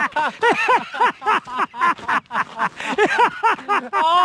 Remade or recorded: recorded